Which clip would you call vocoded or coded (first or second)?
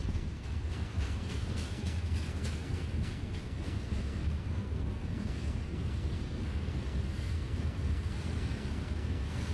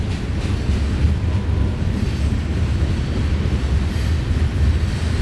first